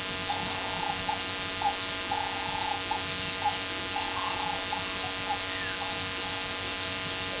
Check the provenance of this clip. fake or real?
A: real